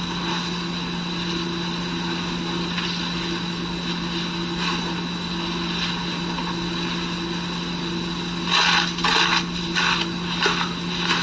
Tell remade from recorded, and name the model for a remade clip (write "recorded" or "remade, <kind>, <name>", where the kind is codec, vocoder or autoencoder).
recorded